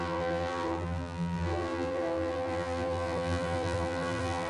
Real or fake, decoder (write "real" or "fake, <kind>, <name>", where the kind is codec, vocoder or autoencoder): fake, vocoder, BigVGAN v2